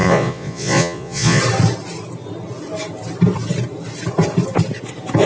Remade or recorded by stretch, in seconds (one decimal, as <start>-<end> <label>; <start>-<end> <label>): 0.0-1.4 remade; 1.4-5.3 recorded